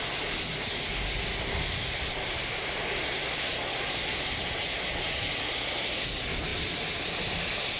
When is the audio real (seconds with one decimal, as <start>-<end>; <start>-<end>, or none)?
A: 0.0-7.8